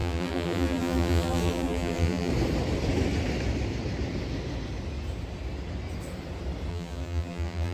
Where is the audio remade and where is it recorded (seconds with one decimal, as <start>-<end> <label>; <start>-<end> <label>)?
0.0-2.3 remade; 2.3-6.7 recorded; 6.7-7.7 remade